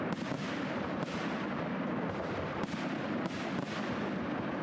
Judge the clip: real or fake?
real